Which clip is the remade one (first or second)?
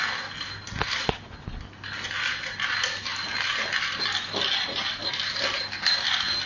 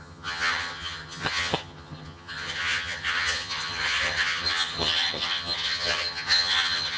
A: second